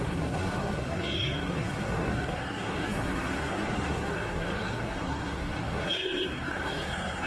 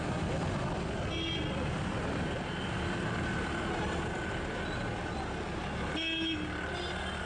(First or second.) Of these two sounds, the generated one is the first